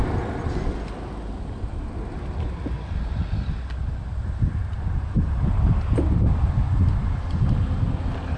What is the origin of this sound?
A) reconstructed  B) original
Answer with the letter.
B